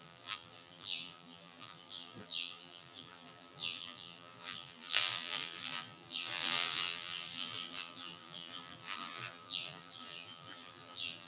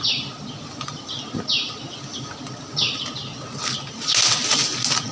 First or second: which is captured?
second